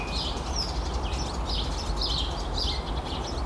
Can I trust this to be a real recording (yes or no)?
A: yes